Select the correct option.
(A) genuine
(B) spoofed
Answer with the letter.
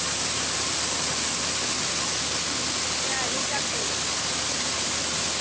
A